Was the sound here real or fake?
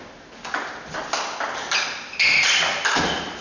real